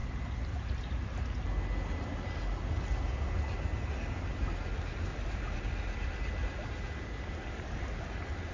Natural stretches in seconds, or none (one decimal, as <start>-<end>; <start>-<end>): 0.0-5.1; 5.6-8.5